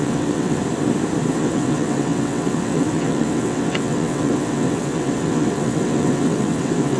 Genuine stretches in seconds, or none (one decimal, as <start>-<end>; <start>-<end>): 0.6-1.3